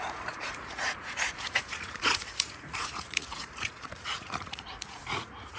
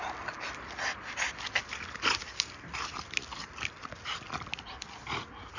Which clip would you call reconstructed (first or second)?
first